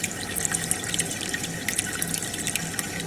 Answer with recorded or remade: recorded